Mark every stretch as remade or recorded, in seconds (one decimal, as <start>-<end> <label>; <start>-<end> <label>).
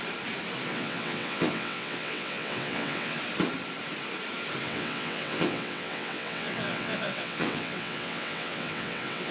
0.0-0.7 recorded; 0.7-3.2 remade; 3.2-4.6 recorded; 4.6-9.3 remade